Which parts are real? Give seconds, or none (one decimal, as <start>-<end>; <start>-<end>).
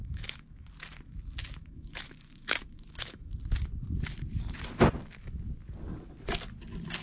0.7-1.6; 3.3-7.0